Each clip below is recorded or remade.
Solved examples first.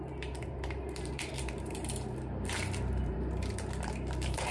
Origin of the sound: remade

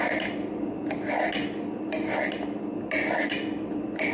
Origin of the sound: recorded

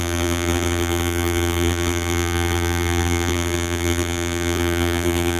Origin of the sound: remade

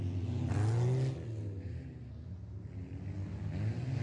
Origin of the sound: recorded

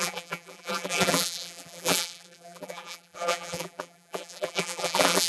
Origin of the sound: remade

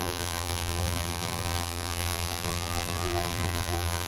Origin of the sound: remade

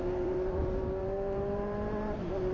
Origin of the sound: remade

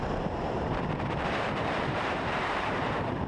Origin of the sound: remade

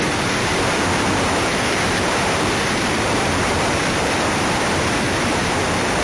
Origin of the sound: remade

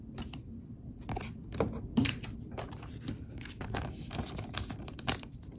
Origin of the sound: remade